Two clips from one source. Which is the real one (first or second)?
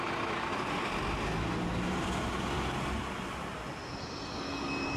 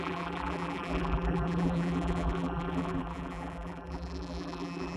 first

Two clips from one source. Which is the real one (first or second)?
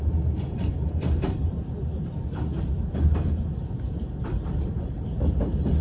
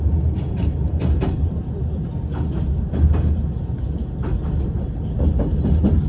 second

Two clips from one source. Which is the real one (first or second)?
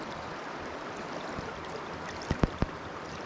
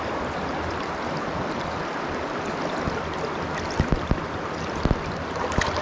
second